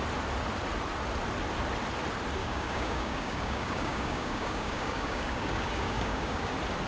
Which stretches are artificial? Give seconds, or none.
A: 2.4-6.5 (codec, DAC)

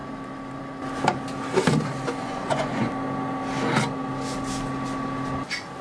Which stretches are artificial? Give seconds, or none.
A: 2.2-2.9 (vocoder, Vocos)